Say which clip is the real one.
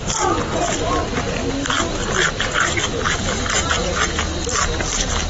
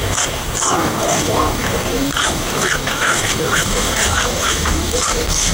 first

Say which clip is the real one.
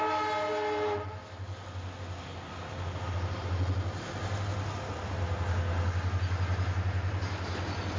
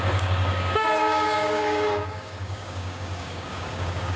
first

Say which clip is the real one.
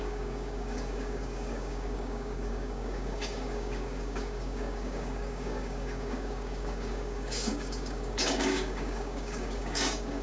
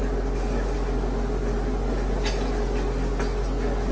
second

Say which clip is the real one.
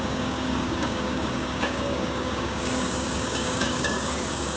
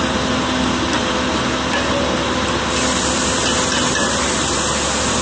second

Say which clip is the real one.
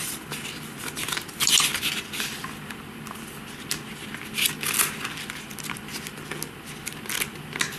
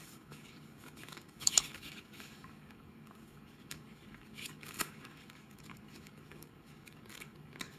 first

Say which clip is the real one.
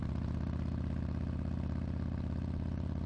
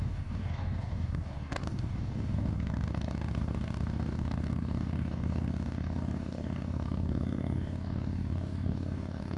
first